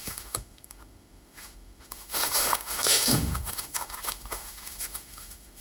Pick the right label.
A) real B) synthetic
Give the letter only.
B